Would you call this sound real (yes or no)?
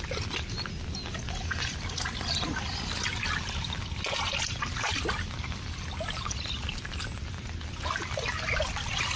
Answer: yes